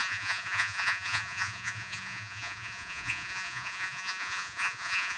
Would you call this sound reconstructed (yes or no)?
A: yes